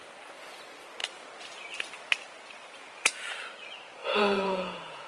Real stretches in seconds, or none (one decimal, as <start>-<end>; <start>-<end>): 0.0-2.8; 3.3-4.0